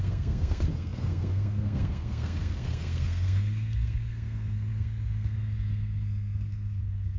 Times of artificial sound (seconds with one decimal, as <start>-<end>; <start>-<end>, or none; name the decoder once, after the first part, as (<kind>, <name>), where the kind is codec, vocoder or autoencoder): 0.0-7.2 (codec, SNAC)